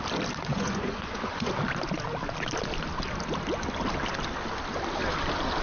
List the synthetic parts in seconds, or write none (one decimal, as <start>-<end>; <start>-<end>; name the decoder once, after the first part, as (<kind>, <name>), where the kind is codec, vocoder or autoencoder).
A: 0.5-1.5 (vocoder, Vocos)